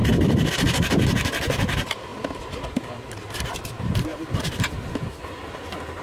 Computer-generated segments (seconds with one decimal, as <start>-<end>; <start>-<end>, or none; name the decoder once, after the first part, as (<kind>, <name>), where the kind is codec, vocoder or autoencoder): 0.5-6.0 (vocoder, BigVGAN v2)

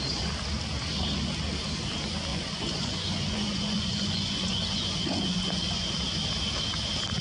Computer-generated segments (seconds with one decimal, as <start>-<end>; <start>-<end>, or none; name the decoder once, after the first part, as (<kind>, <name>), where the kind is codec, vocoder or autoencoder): 2.3-5.9 (vocoder, Vocos)

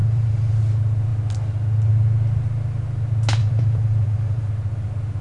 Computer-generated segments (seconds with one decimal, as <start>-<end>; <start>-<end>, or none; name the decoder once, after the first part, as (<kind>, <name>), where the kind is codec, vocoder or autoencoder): 0.0-0.6 (vocoder, BigVGAN v2); 3.4-4.5

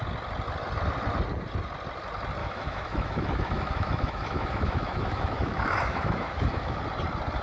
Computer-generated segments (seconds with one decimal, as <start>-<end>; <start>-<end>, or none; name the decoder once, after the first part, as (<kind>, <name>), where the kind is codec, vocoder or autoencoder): 2.4-6.8 (autoencoder, DAC-VAE)